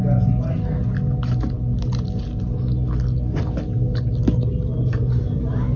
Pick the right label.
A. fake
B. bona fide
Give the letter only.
B